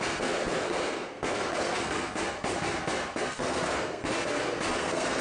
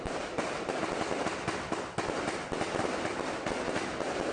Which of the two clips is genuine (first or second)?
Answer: second